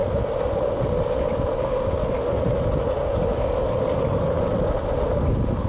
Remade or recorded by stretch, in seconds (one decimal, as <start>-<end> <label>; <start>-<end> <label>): 0.0-1.6 recorded; 1.6-2.0 remade; 2.0-5.7 recorded